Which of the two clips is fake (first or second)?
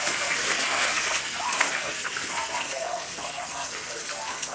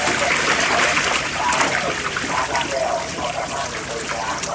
first